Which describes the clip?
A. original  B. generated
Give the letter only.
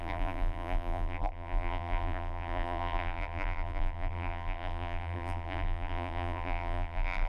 B